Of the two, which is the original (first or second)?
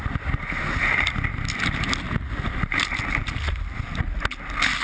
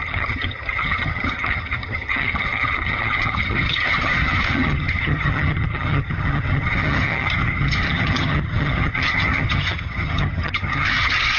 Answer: first